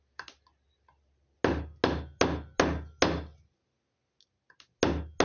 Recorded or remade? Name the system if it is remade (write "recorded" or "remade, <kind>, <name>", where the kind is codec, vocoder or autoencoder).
recorded